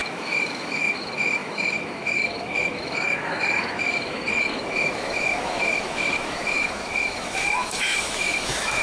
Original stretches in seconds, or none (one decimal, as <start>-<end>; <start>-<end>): none